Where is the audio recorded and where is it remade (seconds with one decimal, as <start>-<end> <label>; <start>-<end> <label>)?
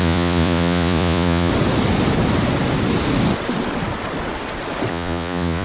0.0-1.5 remade; 1.5-4.9 recorded; 4.9-5.6 remade